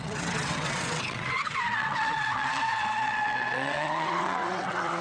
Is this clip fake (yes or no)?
yes